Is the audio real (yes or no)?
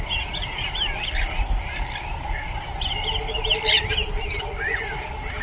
yes